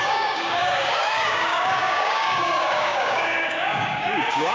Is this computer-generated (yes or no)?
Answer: yes